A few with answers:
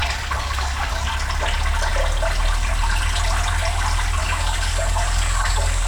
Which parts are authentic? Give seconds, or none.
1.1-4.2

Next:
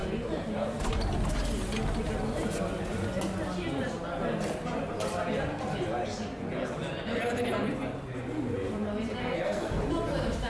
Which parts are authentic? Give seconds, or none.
0.0-9.2; 9.8-10.5